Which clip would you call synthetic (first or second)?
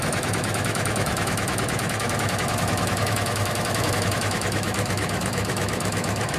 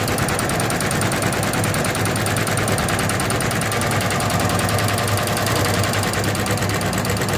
first